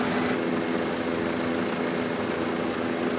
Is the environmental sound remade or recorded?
recorded